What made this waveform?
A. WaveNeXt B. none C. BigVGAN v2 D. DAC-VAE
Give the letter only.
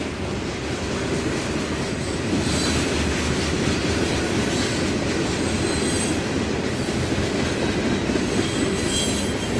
B